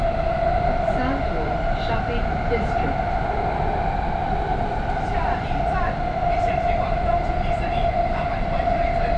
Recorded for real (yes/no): yes